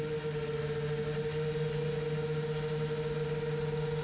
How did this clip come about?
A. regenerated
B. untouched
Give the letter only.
B